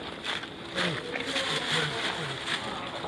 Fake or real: real